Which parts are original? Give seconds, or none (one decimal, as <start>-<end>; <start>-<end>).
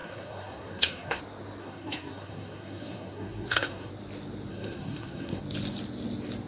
1.2-1.6; 3.9-4.5; 5.4-6.5